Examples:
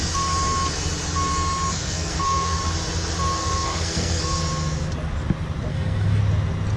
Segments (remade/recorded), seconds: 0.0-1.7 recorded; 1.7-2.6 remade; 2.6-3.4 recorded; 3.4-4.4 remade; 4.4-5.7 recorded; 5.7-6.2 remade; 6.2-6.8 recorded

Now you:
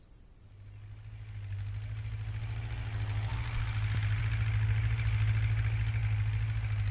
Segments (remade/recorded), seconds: 0.0-6.9 recorded